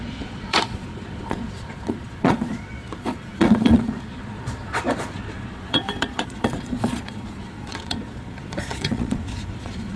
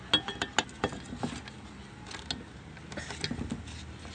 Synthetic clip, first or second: first